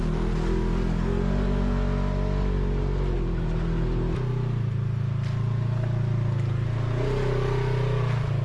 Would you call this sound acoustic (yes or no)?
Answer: yes